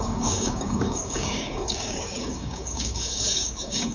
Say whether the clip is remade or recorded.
remade